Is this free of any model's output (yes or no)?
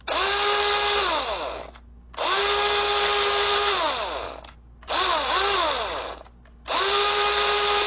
yes